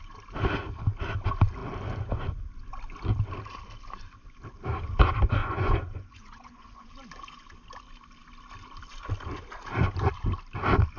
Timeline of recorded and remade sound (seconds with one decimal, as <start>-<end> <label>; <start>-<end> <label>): 0.0-5.4 recorded; 5.4-6.9 remade; 6.9-11.0 recorded